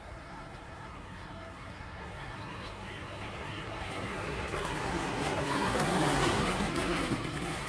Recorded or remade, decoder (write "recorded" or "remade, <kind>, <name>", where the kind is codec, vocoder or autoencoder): remade, codec, SNAC